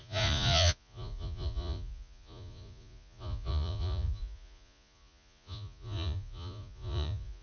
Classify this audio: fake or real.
fake